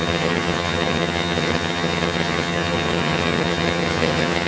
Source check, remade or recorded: remade